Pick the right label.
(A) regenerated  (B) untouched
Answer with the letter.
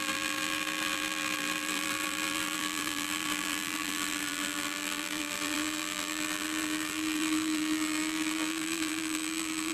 A